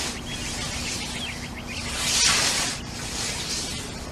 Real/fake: real